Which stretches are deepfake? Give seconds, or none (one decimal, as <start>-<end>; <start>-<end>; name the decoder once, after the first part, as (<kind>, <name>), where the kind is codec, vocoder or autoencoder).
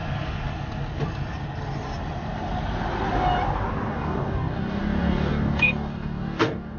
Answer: 3.9-6.8 (codec, DAC)